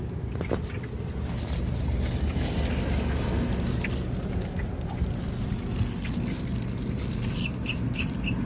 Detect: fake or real real